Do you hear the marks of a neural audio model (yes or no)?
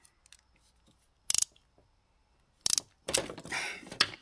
no